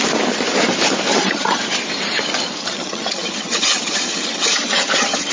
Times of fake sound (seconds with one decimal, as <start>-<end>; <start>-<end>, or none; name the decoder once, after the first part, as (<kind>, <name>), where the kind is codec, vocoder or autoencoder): 1.1-1.6 (vocoder, HiFi-GAN); 2.6-5.3